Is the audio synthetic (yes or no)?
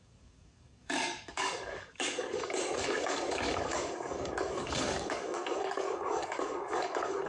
yes